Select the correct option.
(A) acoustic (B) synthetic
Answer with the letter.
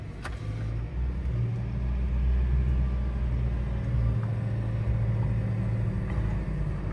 A